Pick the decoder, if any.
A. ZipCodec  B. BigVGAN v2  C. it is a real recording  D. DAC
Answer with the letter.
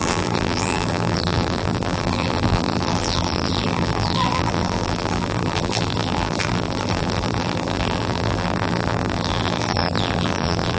B